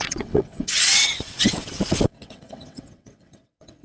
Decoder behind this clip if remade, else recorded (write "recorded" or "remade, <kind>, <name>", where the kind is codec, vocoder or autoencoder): remade, vocoder, WaveNeXt